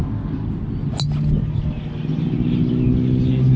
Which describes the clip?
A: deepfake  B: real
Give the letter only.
B